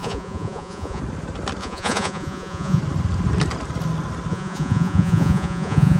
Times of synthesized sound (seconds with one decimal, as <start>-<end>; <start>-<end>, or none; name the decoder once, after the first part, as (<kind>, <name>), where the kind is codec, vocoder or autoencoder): 0.0-1.0 (vocoder, Vocos); 1.6-2.8; 4.3-6.0